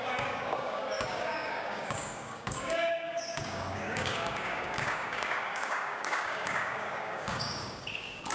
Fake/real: fake